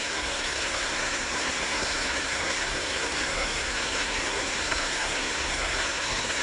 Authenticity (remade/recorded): remade